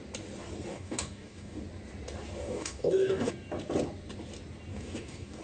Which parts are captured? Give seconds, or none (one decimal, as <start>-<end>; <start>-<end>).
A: 0.0-0.7; 1.6-2.4; 3.3-4.7